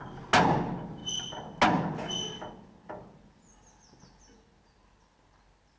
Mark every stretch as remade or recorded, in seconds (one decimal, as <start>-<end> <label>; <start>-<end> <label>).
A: 0.0-5.8 recorded